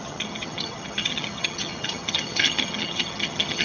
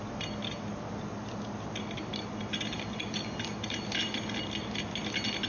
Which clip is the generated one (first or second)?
first